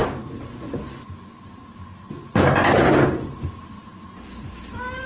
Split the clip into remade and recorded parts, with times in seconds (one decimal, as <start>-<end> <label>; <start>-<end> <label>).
0.0-5.1 recorded